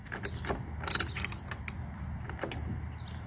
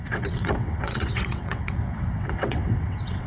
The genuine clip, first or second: first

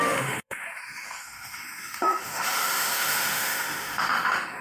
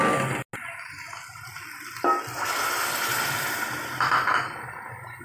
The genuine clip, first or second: second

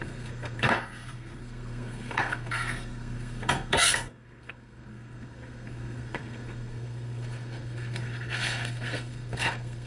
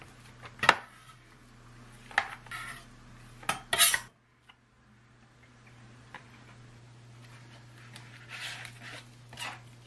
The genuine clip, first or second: second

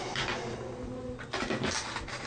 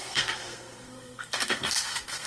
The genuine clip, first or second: first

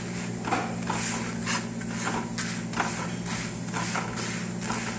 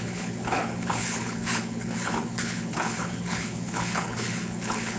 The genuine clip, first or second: first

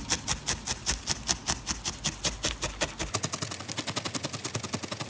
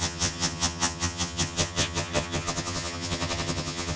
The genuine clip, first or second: first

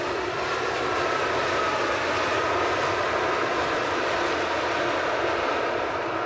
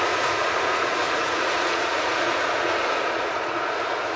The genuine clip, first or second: first